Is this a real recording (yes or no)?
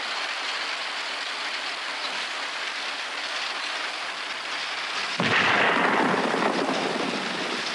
no